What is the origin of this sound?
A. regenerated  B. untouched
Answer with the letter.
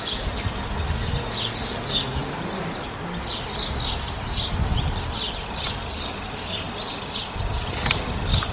B